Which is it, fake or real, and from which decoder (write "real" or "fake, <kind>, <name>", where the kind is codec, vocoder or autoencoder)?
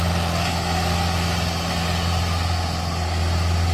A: real